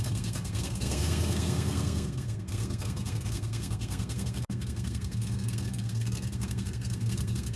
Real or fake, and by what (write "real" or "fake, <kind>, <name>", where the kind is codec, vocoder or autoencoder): fake, codec, SNAC